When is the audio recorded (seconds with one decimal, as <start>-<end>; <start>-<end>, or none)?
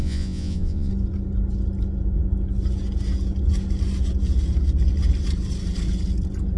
0.9-6.6